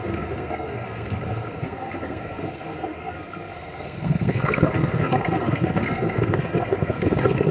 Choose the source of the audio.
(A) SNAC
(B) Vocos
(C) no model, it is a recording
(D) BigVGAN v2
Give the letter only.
A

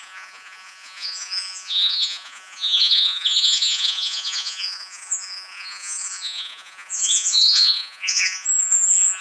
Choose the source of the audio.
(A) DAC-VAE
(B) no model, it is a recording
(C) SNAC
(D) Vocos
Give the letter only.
D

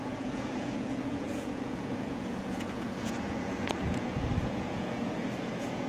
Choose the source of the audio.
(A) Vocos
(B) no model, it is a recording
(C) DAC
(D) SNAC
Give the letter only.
A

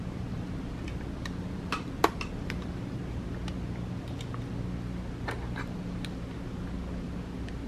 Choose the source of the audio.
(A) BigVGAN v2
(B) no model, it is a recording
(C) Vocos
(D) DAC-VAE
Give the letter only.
B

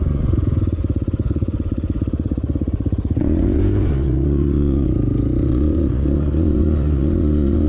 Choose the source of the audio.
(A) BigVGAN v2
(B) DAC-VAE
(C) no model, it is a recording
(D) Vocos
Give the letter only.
D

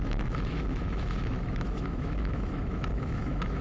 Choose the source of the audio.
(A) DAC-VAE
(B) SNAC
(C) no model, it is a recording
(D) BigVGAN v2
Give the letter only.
A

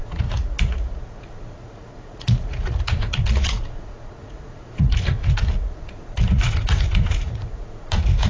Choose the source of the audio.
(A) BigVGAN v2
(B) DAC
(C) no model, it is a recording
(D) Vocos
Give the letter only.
D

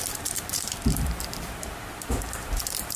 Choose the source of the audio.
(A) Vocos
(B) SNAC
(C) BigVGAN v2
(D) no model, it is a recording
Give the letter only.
C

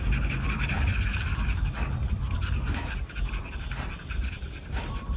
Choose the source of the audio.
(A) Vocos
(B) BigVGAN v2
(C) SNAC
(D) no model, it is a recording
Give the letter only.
B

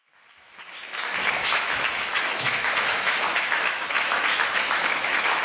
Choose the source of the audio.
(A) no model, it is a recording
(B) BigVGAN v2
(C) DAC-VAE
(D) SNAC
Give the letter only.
C